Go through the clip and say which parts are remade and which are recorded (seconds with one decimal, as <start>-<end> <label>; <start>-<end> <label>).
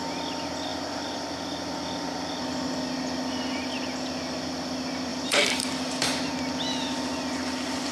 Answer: 0.0-5.1 recorded; 5.1-6.3 remade; 6.3-7.9 recorded